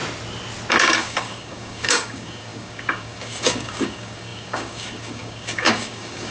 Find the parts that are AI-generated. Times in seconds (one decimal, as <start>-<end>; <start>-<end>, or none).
0.7-6.3